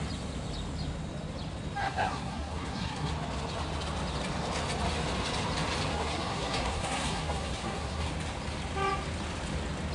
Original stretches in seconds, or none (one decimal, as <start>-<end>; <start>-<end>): 0.0-1.8; 3.1-5.9; 8.1-9.9